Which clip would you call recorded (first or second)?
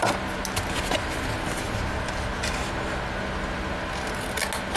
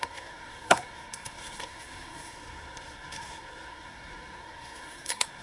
first